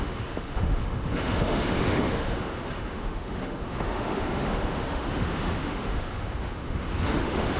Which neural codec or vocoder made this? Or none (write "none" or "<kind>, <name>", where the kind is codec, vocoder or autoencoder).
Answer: autoencoder, DAC-VAE